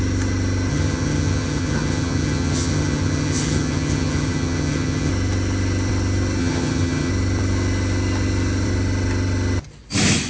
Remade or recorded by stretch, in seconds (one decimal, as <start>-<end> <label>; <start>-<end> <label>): 0.0-0.7 recorded; 0.7-5.1 remade; 5.1-6.4 recorded; 6.4-7.1 remade; 7.1-10.3 recorded